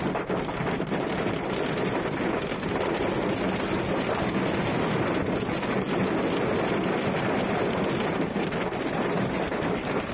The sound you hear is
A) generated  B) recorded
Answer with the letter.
B